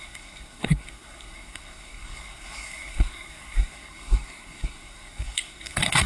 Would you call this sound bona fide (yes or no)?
no